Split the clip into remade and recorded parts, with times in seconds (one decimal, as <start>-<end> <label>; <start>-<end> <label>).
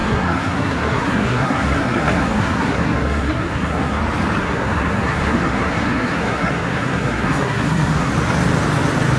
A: 0.0-4.0 remade; 4.0-4.4 recorded; 4.4-8.1 remade; 8.1-9.2 recorded